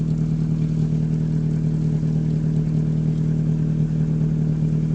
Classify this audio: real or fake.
real